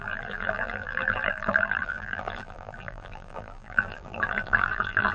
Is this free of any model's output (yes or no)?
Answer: no